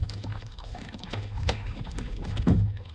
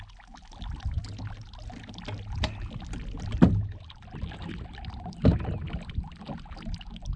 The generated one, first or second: first